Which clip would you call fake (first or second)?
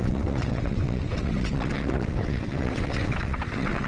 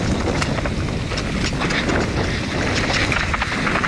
first